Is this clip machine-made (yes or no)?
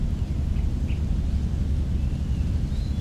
no